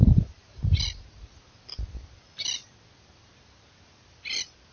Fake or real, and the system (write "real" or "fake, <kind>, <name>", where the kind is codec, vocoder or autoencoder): real